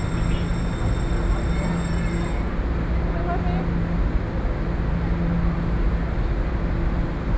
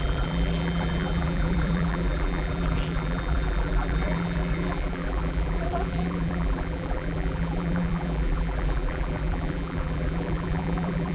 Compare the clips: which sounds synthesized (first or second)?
second